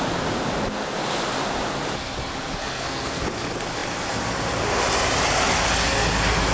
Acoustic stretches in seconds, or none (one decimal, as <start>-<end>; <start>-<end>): 0.0-2.6; 3.2-6.5